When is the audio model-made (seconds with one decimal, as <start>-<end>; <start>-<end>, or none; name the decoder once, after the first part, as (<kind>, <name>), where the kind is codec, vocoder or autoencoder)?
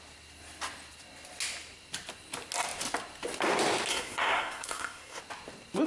3.9-5.2 (codec, SNAC)